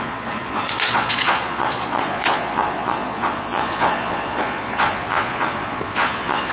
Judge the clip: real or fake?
fake